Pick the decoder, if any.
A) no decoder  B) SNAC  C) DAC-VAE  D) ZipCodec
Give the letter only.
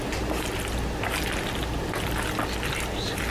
A